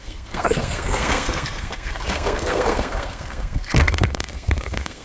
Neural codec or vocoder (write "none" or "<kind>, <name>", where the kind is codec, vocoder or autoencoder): codec, SNAC